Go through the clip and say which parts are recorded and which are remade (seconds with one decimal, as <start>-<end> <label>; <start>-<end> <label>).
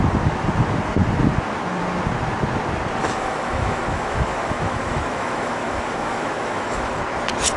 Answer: 0.0-3.0 recorded; 3.0-7.0 remade; 7.0-7.6 recorded